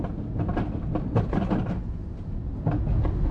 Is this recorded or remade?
recorded